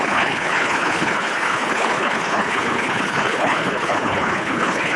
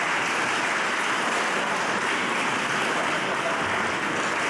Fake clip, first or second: first